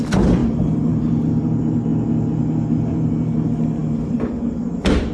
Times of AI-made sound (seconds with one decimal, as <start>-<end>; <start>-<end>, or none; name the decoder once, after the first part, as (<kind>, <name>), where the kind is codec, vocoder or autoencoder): 0.4-1.1 (vocoder, BigVGAN v2); 3.8-4.6